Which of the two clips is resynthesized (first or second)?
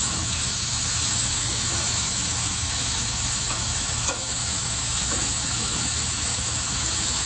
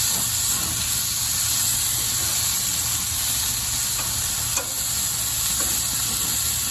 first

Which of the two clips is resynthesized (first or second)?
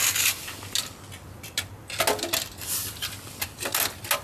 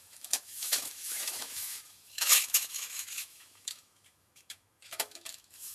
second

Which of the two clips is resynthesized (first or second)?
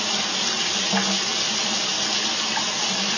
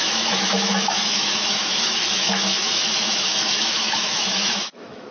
second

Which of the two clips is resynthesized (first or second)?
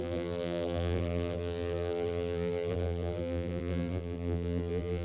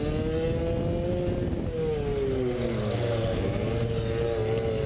first